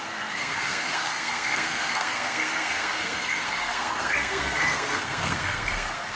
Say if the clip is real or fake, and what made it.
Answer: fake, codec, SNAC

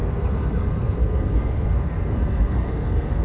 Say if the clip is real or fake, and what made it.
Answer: fake, codec, SNAC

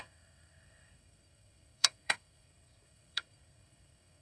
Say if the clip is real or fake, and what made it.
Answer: fake, codec, SNAC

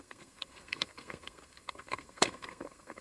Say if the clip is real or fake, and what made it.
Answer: fake, codec, SNAC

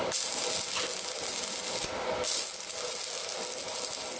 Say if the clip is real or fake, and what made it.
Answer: real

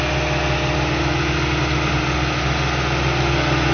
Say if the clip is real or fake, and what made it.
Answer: real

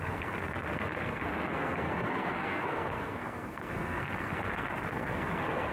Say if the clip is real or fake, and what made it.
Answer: fake, codec, SNAC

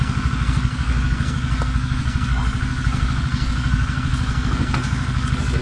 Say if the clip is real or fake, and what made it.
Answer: fake, codec, SNAC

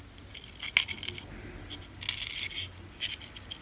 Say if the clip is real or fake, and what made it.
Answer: real